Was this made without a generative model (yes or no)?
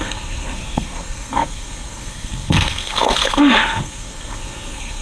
no